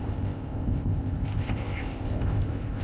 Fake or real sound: fake